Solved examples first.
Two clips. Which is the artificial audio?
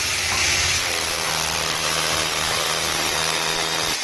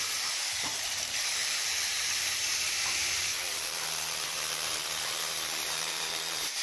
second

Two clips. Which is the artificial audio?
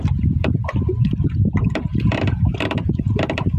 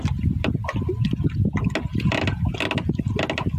first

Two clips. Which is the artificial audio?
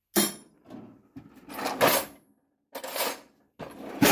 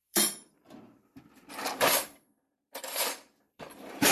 second